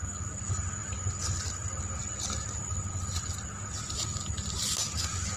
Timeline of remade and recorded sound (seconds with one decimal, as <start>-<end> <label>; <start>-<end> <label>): 0.0-5.4 recorded